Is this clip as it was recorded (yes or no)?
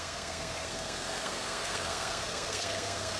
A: no